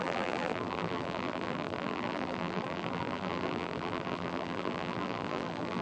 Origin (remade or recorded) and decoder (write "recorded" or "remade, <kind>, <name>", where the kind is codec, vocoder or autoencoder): remade, vocoder, BigVGAN v2